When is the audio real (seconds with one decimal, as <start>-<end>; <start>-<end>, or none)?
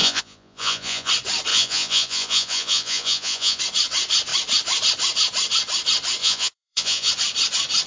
1.1-1.5; 3.6-6.2; 7.1-7.9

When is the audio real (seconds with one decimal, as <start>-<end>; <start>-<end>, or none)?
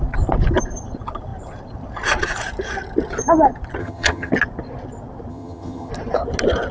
0.0-3.8; 4.3-5.3; 5.9-6.7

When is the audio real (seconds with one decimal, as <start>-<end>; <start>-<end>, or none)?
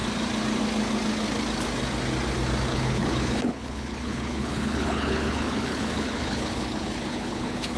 0.0-2.7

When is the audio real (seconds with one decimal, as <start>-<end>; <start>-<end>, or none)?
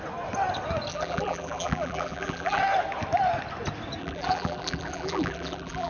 0.0-0.9; 2.6-4.0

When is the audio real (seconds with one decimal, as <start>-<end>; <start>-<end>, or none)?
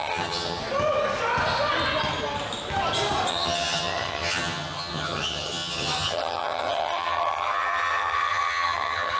0.6-3.3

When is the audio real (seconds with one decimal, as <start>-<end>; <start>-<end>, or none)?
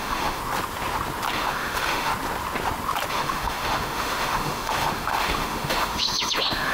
0.4-1.3; 2.1-3.1